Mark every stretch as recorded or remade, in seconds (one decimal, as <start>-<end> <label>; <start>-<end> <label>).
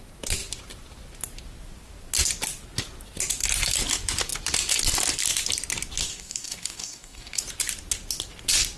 0.0-6.0 recorded; 6.0-7.4 remade; 7.4-8.8 recorded